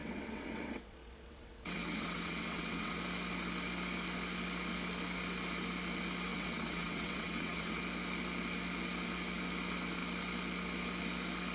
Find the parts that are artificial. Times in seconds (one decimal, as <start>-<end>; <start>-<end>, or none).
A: 0.0-3.0; 6.3-7.8